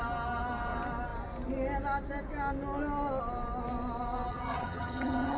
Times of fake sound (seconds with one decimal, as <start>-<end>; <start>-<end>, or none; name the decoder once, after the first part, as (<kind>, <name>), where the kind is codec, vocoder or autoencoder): 4.3-5.4 (vocoder, HiFi-GAN)